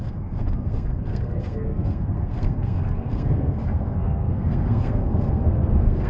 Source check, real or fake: fake